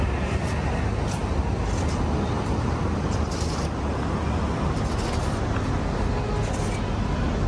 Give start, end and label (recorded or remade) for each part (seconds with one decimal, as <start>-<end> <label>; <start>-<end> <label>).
0.0-7.5 recorded